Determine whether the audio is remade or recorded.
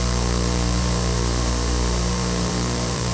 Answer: remade